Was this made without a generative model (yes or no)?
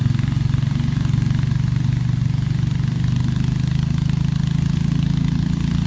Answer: yes